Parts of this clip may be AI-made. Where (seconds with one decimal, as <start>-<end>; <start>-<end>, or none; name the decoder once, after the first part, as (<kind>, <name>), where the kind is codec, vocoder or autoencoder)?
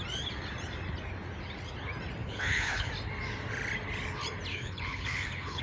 2.2-2.9 (codec, HILCodec); 4.5-5.6